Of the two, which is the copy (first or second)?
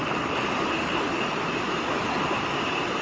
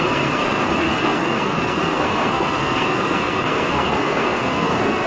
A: second